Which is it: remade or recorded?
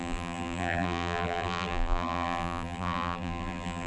remade